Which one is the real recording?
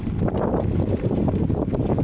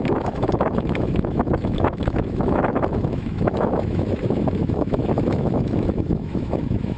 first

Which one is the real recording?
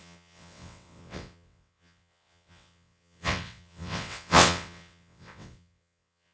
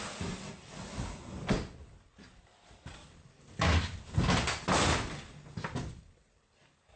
second